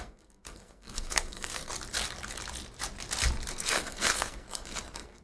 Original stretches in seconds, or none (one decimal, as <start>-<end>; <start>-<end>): 1.7-3.5